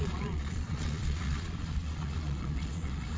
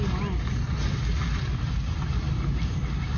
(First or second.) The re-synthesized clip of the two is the first